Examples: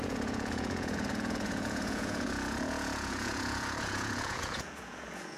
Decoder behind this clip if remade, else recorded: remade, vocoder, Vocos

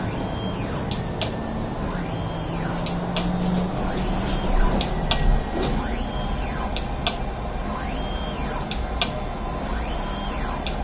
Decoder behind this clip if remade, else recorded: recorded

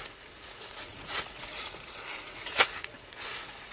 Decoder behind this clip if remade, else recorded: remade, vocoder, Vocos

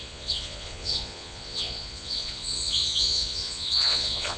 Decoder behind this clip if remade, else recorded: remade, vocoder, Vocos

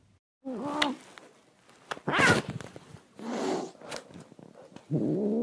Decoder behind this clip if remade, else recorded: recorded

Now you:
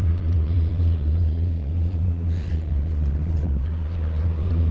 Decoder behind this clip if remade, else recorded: remade, vocoder, Vocos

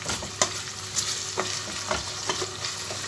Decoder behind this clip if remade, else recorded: recorded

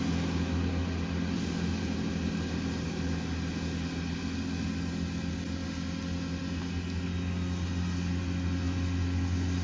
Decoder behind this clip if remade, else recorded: recorded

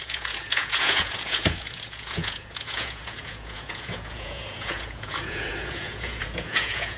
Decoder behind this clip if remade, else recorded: remade, vocoder, Vocos